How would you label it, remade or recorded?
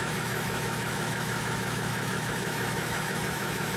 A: remade